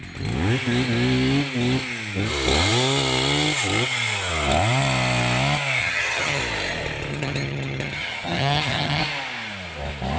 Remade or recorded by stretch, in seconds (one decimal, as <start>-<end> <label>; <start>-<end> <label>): 0.0-5.8 recorded; 5.8-6.4 remade; 6.4-7.1 recorded; 7.1-9.0 remade; 9.0-10.2 recorded